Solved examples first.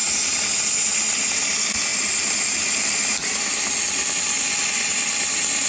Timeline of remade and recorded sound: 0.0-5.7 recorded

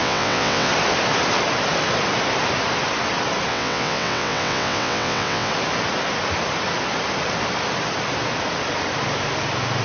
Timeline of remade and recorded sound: 0.0-0.7 remade; 0.7-3.5 recorded; 3.5-5.5 remade; 5.5-9.8 recorded

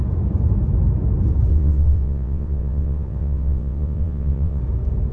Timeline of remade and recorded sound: 0.0-1.5 recorded; 1.5-4.6 remade; 4.6-5.1 recorded

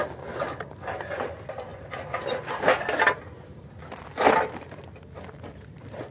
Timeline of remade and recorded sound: 0.0-6.1 recorded

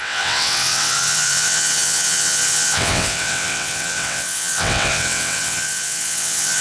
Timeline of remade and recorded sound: 0.0-6.6 remade

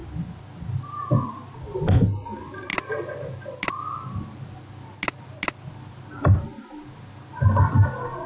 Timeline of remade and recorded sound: 0.0-8.3 recorded